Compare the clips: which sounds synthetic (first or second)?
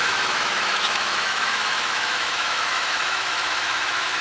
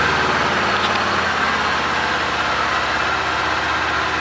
first